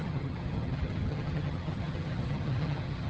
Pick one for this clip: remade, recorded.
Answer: remade